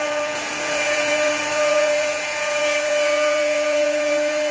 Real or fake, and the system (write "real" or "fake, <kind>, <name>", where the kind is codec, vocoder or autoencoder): fake, vocoder, Vocos